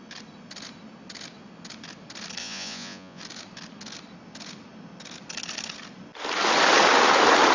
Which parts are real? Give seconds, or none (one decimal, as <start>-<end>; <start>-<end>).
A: 0.0-2.4; 3.2-7.5